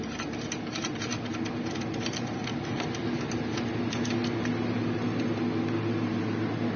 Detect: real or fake real